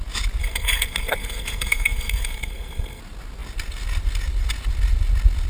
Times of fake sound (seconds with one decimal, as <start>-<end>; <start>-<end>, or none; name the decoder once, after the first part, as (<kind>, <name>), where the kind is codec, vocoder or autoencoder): 0.4-3.0 (codec, SNAC)